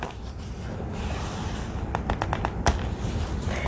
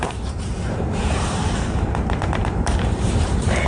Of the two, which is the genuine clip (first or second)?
first